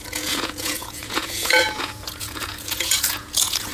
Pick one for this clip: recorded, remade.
remade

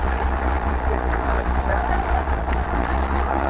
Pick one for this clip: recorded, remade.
remade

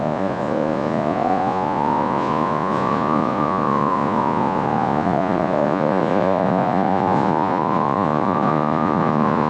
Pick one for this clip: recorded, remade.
remade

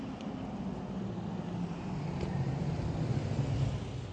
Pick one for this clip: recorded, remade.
recorded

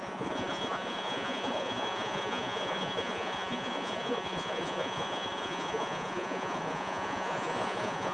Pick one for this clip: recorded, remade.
remade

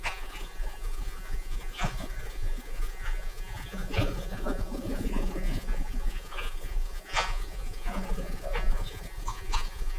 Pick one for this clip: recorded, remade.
remade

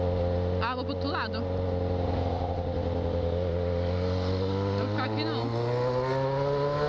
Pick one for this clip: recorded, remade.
recorded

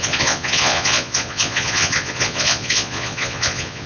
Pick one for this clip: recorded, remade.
remade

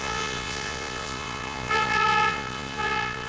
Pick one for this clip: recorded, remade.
remade